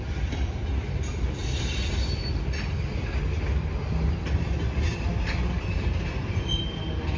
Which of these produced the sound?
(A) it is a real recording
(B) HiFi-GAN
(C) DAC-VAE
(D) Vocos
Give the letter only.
A